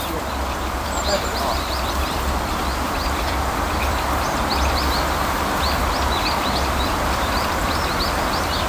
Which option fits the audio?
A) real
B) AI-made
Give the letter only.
B